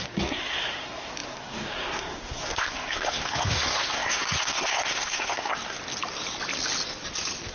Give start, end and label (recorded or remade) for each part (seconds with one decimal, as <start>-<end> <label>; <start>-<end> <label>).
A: 0.0-5.8 remade; 5.8-7.5 recorded

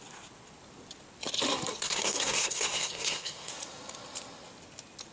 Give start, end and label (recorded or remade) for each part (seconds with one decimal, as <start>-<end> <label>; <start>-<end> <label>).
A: 0.0-1.8 recorded; 1.8-3.5 remade; 3.5-5.1 recorded

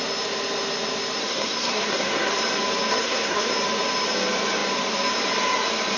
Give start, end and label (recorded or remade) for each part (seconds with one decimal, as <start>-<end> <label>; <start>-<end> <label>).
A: 0.0-1.2 recorded; 1.2-2.3 remade; 2.3-2.9 recorded; 2.9-3.5 remade; 3.5-6.0 recorded

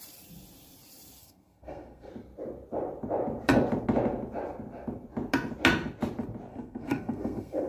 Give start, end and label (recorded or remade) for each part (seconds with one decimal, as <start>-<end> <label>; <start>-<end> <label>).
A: 0.0-1.2 recorded; 1.2-2.1 remade; 2.1-6.5 recorded; 6.5-7.7 remade

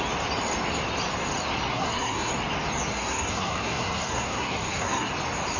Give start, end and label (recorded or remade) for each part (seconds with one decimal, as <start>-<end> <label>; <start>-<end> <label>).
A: 0.0-1.7 recorded; 1.7-2.3 remade; 2.3-2.9 recorded; 2.9-5.1 remade; 5.1-5.6 recorded